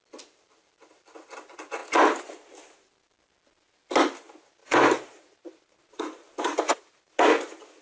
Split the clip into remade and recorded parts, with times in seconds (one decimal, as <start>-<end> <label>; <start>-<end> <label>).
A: 0.0-4.6 recorded; 4.6-7.2 remade; 7.2-7.8 recorded